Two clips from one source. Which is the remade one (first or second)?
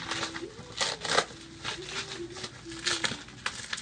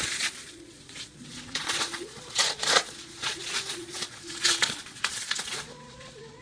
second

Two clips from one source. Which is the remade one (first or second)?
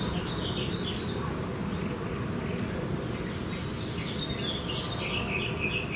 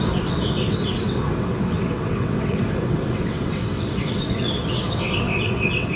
second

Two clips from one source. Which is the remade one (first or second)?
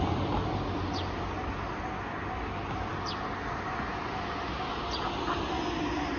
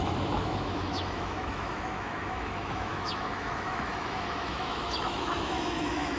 second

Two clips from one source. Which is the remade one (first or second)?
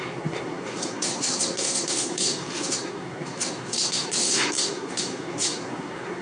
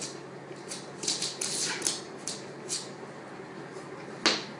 first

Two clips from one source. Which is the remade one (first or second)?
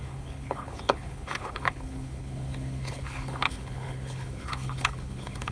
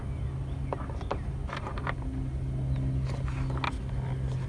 first